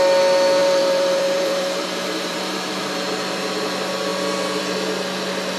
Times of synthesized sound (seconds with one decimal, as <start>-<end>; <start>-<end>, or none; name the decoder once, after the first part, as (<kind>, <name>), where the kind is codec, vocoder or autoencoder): 0.6-3.5 (vocoder, BigVGAN v2)